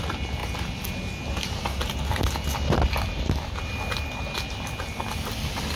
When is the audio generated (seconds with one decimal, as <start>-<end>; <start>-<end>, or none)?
none